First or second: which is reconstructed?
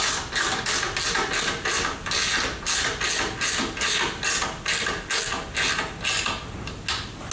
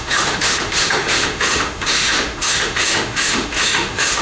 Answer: second